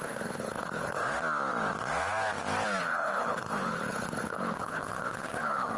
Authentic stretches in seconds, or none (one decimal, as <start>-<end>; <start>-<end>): 1.0-2.8